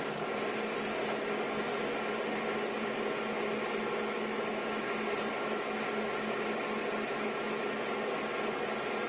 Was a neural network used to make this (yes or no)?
no